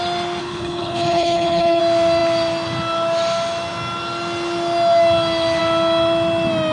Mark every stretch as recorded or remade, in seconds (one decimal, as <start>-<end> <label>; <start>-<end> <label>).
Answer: 0.0-0.4 recorded; 0.4-1.8 remade; 1.8-6.7 recorded